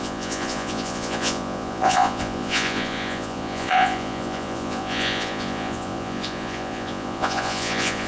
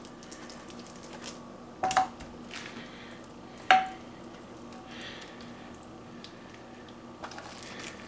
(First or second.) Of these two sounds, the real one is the second